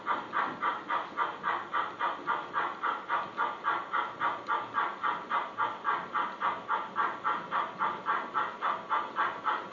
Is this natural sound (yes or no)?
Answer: yes